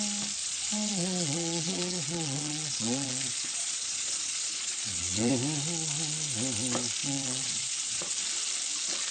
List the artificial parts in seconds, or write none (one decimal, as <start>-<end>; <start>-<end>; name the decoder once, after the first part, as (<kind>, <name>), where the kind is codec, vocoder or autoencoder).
0.4-5.3 (vocoder, Vocos); 7.0-8.1